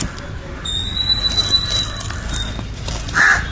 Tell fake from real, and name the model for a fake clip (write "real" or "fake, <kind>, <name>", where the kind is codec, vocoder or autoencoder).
real